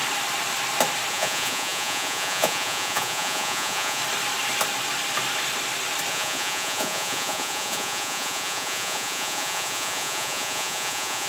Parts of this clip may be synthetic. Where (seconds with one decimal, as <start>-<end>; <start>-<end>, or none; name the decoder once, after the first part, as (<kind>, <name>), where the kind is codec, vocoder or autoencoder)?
1.1-4.0 (vocoder, Vocos); 6.1-11.3